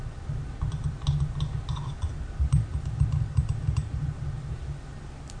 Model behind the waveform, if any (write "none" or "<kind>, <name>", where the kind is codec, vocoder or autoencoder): none